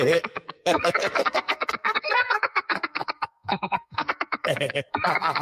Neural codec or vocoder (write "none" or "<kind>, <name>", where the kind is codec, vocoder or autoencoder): codec, SNAC